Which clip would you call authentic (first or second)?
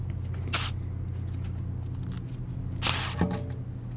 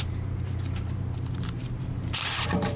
first